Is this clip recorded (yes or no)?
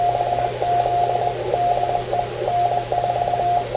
yes